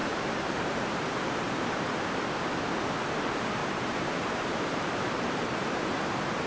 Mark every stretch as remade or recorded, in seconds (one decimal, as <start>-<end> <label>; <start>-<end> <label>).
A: 0.0-1.8 remade; 1.8-3.6 recorded; 3.6-6.5 remade